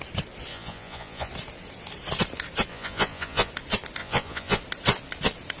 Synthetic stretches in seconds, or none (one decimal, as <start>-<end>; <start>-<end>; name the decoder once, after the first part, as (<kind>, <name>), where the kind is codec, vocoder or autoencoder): 0.5-1.3 (vocoder, Vocos); 2.7-3.5; 4.0-4.6